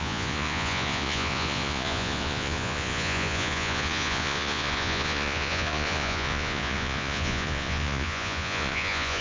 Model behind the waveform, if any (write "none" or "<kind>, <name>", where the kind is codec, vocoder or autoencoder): vocoder, Vocos